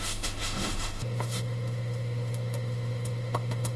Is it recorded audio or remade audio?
remade